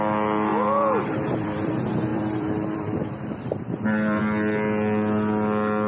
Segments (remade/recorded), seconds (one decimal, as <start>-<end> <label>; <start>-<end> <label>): 0.0-0.5 recorded; 0.5-1.7 remade; 1.7-2.1 recorded; 2.1-4.2 remade; 4.2-5.9 recorded